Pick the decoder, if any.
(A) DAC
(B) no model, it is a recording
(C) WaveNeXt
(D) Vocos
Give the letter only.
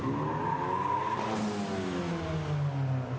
B